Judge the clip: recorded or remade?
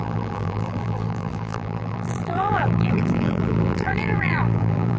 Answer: remade